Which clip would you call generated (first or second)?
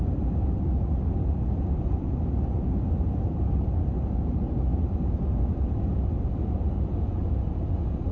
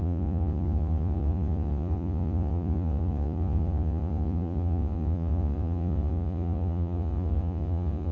second